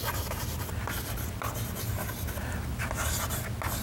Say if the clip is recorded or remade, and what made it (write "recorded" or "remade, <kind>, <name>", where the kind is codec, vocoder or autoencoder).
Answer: recorded